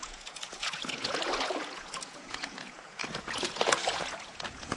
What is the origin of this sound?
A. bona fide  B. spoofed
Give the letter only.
B